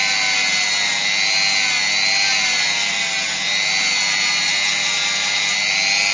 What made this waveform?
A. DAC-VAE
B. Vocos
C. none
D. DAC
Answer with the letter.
C